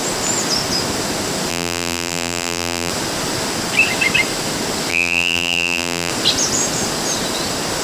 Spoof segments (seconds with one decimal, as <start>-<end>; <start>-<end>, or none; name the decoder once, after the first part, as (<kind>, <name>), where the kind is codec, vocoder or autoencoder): 1.5-2.9 (vocoder, BigVGAN v2); 4.9-6.1